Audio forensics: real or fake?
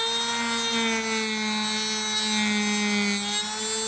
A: real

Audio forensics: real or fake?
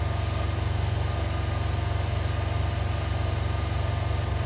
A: real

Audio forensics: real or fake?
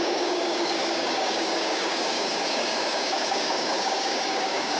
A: fake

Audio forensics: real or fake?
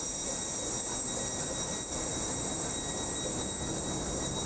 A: real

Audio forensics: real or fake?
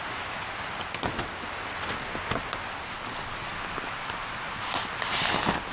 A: real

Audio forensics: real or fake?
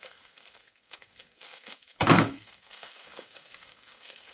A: fake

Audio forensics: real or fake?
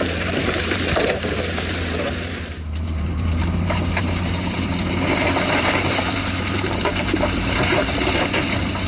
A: fake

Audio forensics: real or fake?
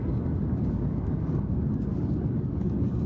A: fake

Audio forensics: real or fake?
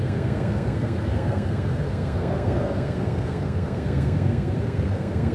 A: fake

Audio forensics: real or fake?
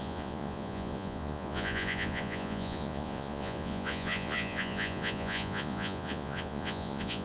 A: fake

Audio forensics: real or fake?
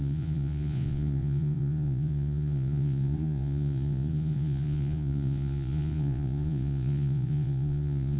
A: fake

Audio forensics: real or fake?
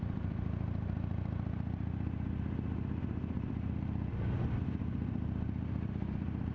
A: fake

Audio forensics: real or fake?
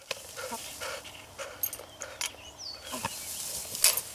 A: real